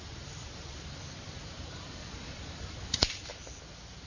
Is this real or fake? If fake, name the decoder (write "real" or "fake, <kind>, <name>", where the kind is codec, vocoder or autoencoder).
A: real